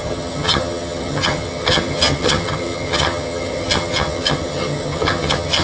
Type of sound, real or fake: fake